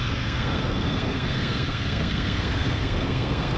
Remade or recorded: remade